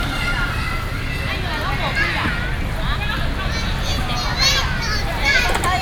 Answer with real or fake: real